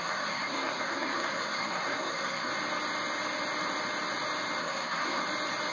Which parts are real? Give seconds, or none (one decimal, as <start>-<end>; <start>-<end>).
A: 2.5-4.6; 5.2-5.7